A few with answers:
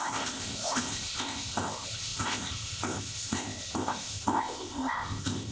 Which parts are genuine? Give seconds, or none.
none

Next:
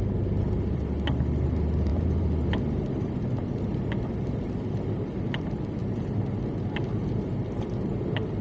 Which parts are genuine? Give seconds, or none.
0.0-1.9; 2.6-8.4

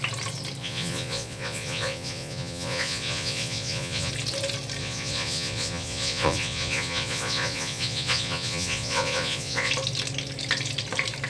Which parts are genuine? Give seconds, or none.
0.0-0.6; 4.1-4.8; 9.7-11.3